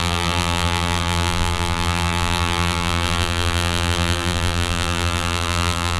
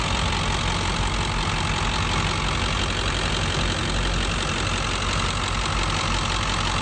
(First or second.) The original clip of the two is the second